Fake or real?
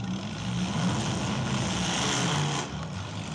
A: real